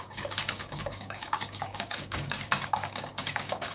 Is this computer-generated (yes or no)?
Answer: yes